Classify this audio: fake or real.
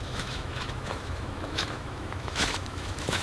fake